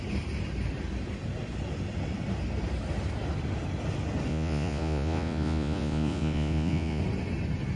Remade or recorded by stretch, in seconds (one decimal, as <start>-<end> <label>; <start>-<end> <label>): 0.0-4.3 recorded; 4.3-7.0 remade; 7.0-7.8 recorded